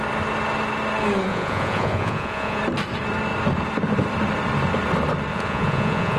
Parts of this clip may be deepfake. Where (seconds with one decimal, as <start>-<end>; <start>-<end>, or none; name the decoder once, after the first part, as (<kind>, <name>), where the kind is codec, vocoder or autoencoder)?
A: 1.3-2.6 (vocoder, Vocos); 5.3-6.2